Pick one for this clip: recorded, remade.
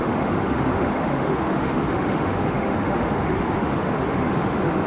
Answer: remade